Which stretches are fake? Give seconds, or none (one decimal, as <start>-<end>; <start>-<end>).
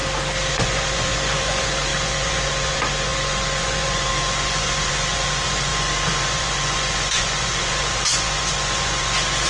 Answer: 0.5-9.5